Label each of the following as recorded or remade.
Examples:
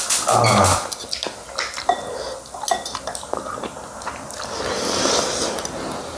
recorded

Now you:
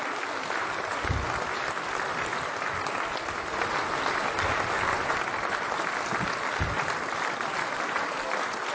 recorded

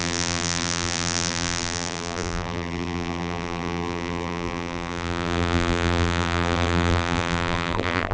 remade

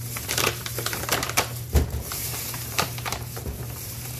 remade